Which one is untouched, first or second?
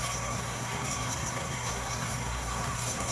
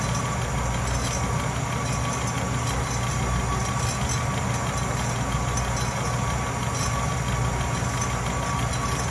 second